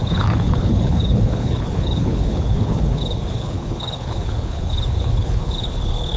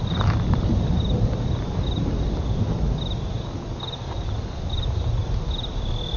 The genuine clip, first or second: second